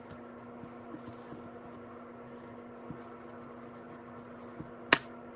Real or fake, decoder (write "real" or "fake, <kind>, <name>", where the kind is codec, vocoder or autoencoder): real